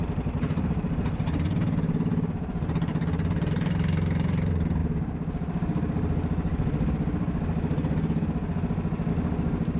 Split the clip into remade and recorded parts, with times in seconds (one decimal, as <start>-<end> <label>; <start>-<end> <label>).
0.0-4.8 remade; 4.8-9.1 recorded; 9.1-9.8 remade